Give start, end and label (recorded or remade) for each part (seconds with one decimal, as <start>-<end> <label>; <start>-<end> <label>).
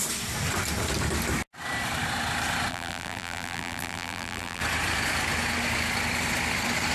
0.0-2.7 recorded; 2.7-4.6 remade; 4.6-6.9 recorded